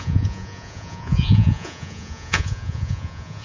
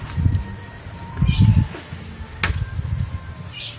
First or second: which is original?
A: second